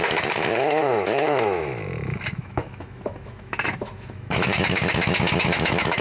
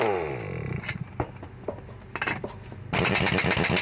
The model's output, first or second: first